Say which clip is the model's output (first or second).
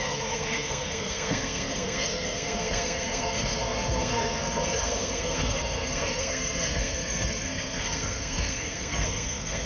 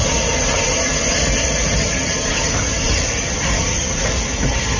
first